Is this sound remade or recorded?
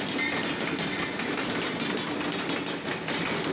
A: recorded